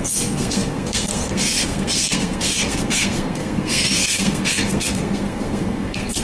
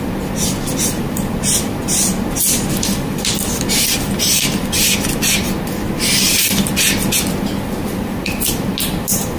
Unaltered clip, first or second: second